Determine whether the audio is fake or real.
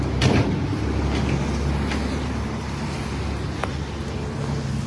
real